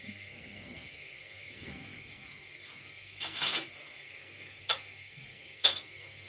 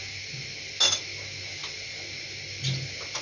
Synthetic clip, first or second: first